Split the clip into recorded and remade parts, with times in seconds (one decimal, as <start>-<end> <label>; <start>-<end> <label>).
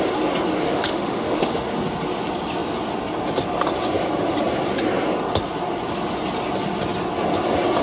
0.0-0.6 recorded; 0.6-1.7 remade; 1.7-7.8 recorded